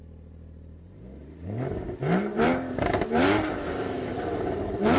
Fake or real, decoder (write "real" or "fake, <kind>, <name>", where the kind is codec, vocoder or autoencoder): fake, vocoder, BigVGAN v2